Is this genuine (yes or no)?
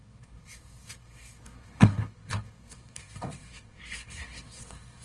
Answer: no